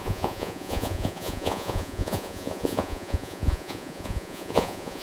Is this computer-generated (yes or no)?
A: yes